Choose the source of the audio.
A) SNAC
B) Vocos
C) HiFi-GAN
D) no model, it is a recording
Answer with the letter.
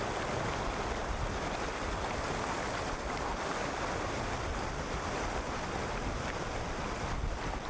D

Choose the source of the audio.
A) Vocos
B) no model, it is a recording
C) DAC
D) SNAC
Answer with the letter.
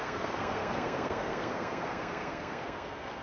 D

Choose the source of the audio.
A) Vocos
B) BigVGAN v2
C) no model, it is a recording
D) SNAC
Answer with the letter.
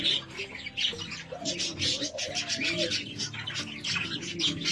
C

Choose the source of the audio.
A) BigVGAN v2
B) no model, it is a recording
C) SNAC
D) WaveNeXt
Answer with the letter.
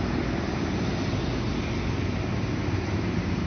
B